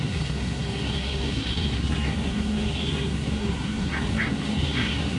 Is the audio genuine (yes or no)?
no